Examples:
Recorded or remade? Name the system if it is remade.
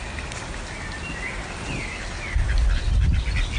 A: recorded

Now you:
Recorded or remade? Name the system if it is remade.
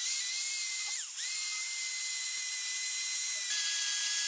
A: remade, vocoder, BigVGAN v2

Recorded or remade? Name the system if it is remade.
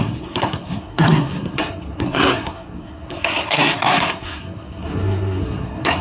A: remade, codec, SNAC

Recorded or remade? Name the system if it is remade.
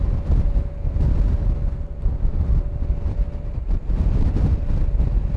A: recorded